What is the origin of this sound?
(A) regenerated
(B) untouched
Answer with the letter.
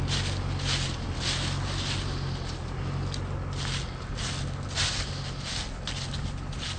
B